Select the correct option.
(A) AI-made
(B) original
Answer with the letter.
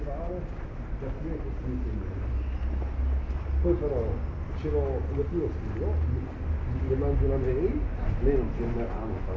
B